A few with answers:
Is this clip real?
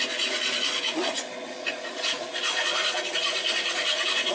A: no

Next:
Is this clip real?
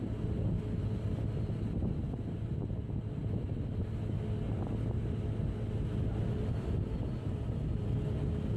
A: yes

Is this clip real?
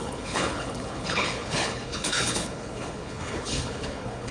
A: no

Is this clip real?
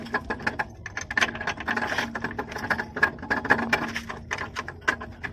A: yes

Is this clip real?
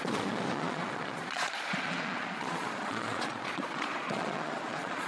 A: no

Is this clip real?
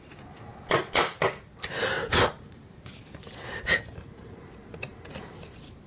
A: yes